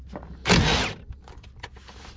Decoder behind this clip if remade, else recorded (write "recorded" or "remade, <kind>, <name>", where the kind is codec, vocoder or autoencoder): recorded